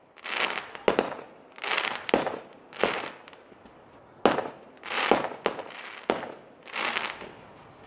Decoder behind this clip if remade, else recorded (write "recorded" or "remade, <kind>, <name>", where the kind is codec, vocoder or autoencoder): recorded